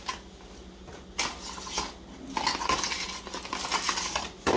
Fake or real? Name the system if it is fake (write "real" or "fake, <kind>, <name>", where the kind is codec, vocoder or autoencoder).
real